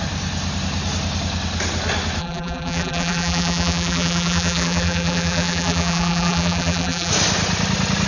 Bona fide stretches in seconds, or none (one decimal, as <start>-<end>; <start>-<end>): 0.0-2.2; 7.1-8.1